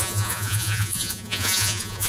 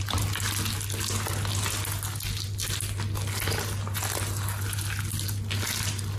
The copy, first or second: first